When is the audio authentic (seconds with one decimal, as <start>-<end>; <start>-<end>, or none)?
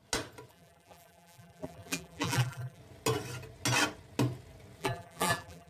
0.0-0.5; 2.8-4.8